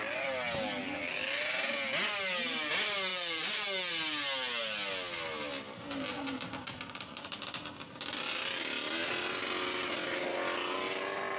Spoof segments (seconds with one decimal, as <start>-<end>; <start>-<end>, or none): 3.1-3.9; 6.6-7.3